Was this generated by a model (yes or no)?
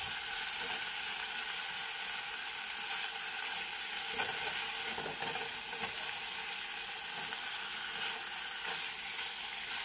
no